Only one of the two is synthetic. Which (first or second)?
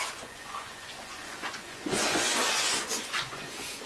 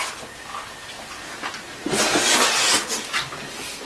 first